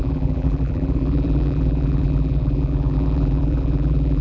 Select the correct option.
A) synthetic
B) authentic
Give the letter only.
A